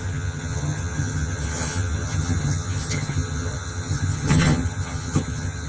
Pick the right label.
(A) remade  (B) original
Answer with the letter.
A